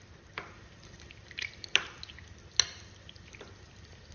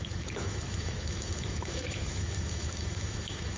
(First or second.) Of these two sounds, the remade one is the second